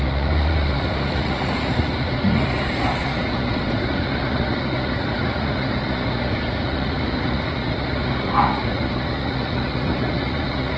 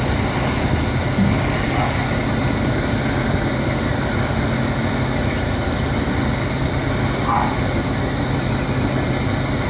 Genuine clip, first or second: second